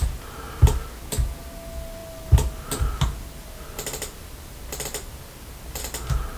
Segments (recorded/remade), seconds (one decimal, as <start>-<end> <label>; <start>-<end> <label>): 0.0-6.4 recorded